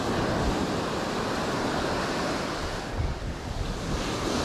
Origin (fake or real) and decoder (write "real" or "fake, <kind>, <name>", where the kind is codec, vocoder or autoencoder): real